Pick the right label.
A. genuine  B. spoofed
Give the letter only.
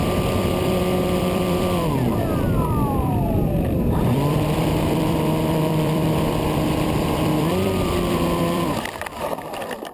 B